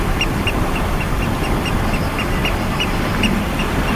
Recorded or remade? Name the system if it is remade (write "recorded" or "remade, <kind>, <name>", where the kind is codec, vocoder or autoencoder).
recorded